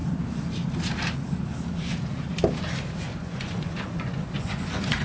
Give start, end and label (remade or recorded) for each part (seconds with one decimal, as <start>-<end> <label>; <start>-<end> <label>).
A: 0.0-3.0 recorded; 3.0-5.0 remade